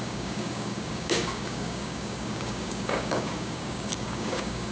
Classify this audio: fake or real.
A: fake